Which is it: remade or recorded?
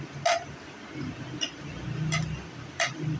recorded